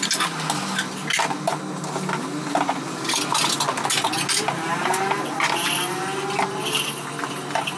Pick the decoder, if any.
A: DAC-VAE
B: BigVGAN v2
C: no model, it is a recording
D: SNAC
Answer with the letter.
C